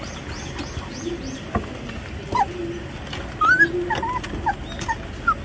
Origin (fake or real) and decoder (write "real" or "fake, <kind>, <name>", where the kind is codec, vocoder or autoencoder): real